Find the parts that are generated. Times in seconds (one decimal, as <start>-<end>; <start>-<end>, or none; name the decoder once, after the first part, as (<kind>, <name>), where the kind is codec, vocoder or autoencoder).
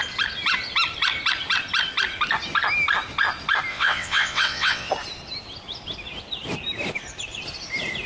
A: 3.7-4.9 (vocoder, WaveNeXt)